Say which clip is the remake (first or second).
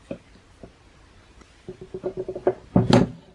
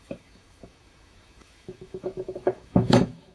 second